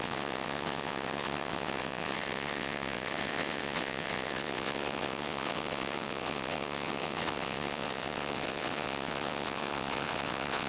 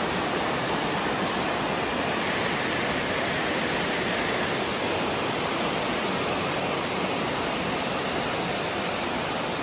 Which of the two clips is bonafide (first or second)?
second